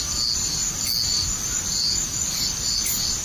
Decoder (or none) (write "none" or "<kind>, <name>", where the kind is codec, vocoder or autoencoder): none